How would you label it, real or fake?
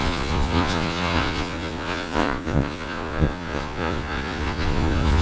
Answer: fake